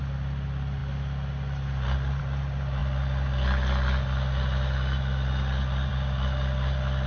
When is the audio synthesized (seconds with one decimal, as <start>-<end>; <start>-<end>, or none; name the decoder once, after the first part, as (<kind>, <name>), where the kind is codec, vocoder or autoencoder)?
none